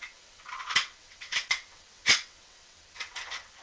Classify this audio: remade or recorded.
remade